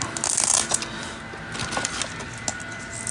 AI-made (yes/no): no